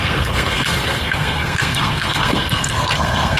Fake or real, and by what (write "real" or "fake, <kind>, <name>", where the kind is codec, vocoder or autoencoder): fake, codec, SNAC